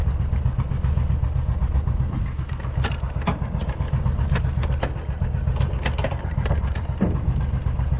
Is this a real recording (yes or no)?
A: yes